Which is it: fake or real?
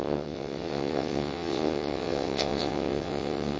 fake